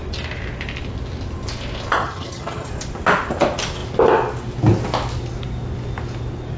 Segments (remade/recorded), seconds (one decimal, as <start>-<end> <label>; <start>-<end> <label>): 0.0-2.0 recorded; 2.0-2.7 remade; 2.7-6.6 recorded

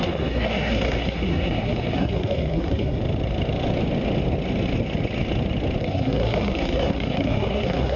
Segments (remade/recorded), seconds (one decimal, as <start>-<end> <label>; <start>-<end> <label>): 0.0-3.0 remade; 3.0-5.8 recorded; 5.8-8.0 remade

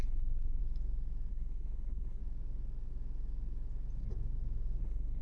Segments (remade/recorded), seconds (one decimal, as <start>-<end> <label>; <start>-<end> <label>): 0.0-0.6 remade; 0.6-1.3 recorded; 1.3-2.2 remade; 2.2-4.8 recorded; 4.8-5.2 remade